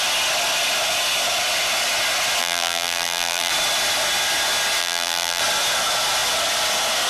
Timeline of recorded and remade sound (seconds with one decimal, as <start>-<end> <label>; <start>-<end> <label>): 0.0-2.4 recorded; 2.4-3.5 remade; 3.5-4.8 recorded; 4.8-5.4 remade; 5.4-7.1 recorded

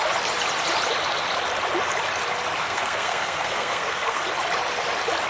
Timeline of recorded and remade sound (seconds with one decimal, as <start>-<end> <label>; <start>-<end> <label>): 0.0-2.6 recorded; 2.6-4.2 remade; 4.2-5.3 recorded

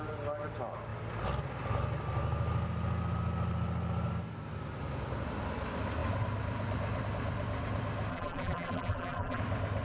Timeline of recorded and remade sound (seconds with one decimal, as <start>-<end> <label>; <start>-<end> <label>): 0.0-8.1 recorded; 8.1-9.4 remade; 9.4-9.8 recorded

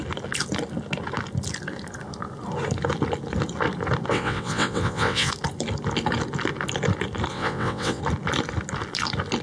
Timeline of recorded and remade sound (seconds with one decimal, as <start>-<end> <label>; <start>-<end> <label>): 0.0-4.1 recorded; 4.1-5.3 remade; 5.3-7.3 recorded; 7.3-8.0 remade; 8.0-9.4 recorded

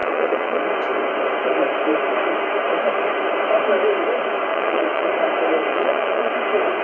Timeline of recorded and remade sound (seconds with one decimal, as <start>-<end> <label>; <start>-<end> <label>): 0.0-0.6 remade; 0.6-4.5 recorded; 4.5-5.1 remade; 5.1-5.7 recorded; 5.7-6.3 remade; 6.3-6.8 recorded